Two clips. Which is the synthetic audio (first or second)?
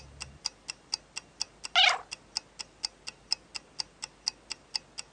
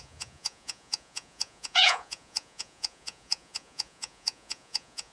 second